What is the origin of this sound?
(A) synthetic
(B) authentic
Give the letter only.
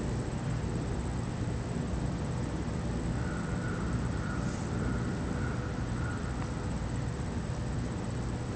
B